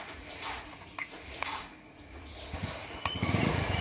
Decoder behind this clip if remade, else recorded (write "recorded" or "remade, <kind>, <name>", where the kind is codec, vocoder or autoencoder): remade, vocoder, Vocos